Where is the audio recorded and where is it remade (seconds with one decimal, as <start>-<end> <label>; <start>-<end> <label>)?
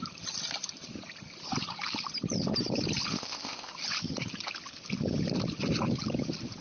0.0-3.1 recorded; 3.1-3.7 remade; 3.7-6.6 recorded